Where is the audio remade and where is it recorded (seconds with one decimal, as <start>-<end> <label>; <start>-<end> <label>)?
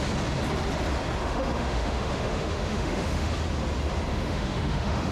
0.0-1.2 recorded; 1.2-3.3 remade; 3.3-4.1 recorded; 4.1-5.1 remade